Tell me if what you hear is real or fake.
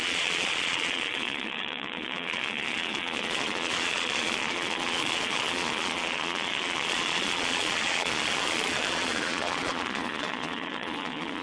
fake